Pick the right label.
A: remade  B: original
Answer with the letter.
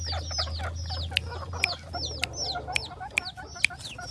B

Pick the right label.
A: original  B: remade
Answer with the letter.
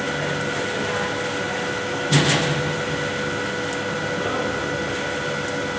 A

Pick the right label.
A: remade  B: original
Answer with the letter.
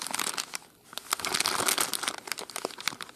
B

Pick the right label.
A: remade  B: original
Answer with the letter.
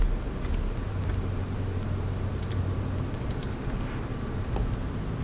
B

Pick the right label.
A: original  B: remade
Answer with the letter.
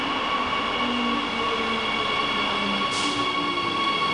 A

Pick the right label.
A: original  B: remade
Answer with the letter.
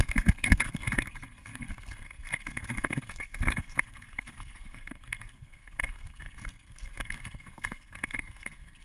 B